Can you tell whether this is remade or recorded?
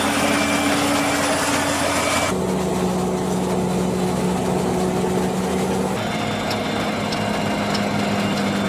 recorded